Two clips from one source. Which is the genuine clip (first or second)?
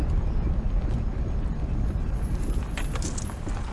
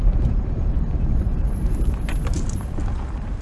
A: first